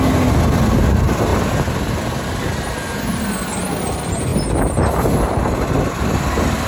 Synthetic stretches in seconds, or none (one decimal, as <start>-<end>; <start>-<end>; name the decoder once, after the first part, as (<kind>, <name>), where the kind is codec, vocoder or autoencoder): none